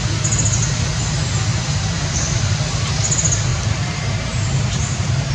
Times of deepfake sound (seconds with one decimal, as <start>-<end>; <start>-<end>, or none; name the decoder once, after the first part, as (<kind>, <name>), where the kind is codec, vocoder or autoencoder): 1.5-2.6 (vocoder, BigVGAN v2); 3.5-5.3